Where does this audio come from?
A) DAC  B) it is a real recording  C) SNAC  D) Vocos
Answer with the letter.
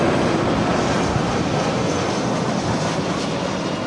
B